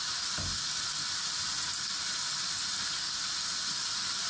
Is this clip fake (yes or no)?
no